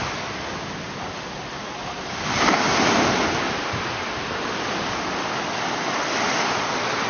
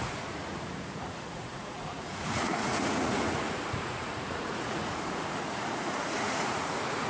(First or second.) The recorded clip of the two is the first